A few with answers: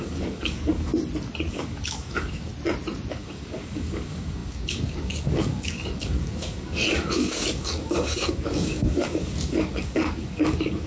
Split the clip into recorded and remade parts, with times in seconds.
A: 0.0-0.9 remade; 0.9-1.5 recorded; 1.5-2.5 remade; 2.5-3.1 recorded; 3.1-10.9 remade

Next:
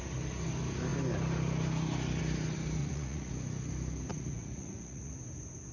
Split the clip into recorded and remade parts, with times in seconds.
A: 0.0-2.8 recorded; 2.8-3.3 remade; 3.3-4.1 recorded; 4.1-5.1 remade; 5.1-5.7 recorded

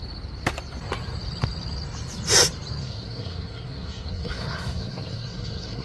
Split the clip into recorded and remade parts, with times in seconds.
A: 0.0-2.8 recorded; 2.8-5.8 remade

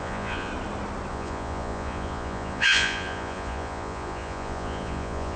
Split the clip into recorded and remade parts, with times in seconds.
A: 0.0-0.5 remade; 0.5-1.1 recorded; 1.1-5.4 remade

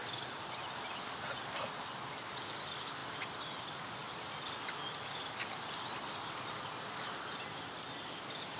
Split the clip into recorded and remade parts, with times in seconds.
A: 0.0-8.6 recorded

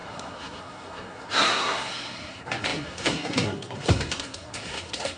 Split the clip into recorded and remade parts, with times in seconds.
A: 0.0-5.2 remade

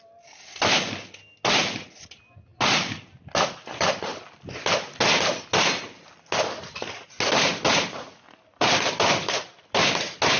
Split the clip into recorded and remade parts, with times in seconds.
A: 0.0-8.5 recorded; 8.5-9.5 remade; 9.5-10.4 recorded

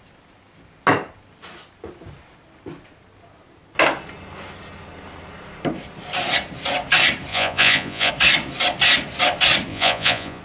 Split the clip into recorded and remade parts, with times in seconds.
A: 0.0-7.3 recorded; 7.3-8.1 remade; 8.1-9.7 recorded; 9.7-10.4 remade